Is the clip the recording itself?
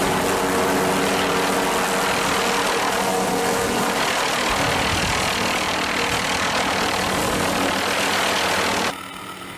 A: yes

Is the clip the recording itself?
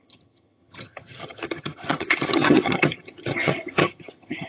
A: no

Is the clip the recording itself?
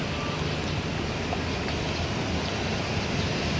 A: yes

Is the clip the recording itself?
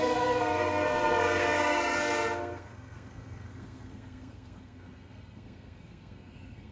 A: no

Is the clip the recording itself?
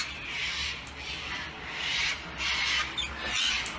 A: yes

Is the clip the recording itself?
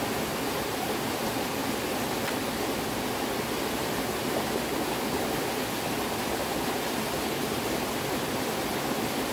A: yes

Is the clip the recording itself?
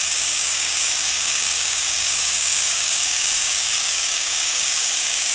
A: no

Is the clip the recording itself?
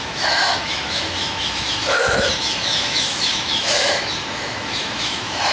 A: no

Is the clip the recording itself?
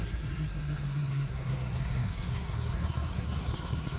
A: no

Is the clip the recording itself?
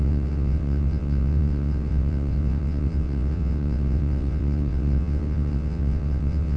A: no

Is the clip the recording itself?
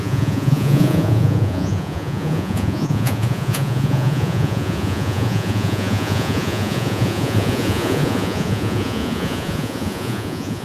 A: no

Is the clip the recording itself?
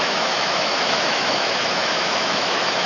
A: no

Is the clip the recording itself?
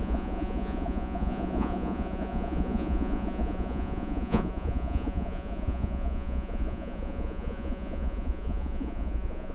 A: no